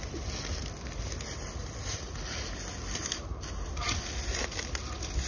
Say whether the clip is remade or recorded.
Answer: recorded